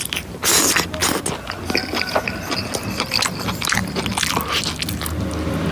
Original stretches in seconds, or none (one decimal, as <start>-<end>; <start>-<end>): 0.0-5.7